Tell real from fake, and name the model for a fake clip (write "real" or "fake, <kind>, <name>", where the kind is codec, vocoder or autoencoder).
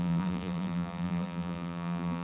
fake, vocoder, BigVGAN v2